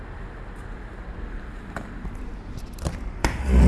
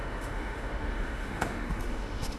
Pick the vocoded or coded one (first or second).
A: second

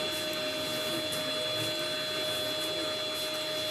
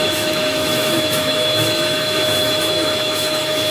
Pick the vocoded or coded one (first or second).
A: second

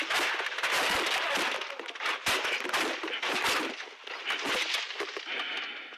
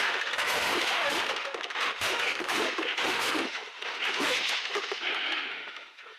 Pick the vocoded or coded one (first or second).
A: second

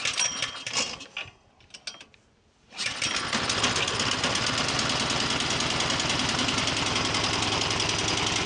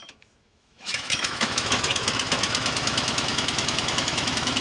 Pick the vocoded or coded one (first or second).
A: second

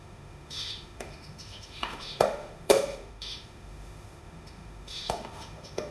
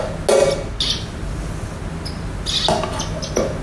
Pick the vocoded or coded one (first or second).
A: first